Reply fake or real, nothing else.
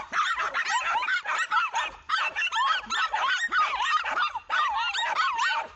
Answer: real